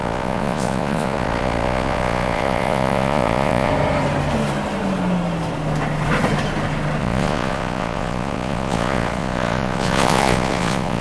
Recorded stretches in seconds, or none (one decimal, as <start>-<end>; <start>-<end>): 3.7-7.0